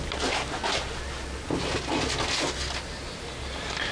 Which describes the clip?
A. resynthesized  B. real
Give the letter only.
B